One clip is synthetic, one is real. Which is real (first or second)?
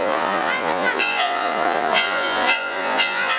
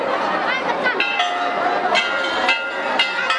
second